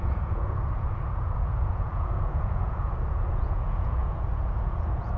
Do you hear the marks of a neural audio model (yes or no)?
yes